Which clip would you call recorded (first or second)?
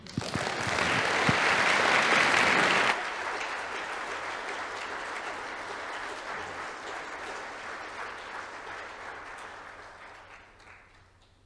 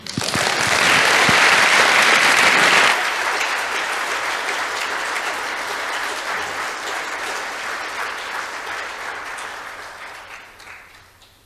first